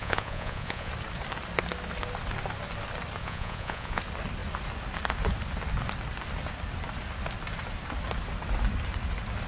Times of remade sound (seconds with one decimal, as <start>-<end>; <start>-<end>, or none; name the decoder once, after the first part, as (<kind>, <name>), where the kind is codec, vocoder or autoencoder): 0.0-0.9 (vocoder, Vocos); 3.2-4.0